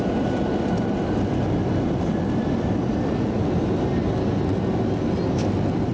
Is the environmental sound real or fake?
real